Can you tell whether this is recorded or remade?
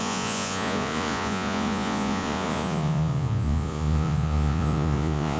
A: remade